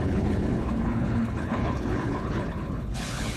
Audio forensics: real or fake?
fake